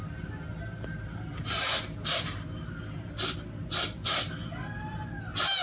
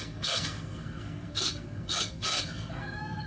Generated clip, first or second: second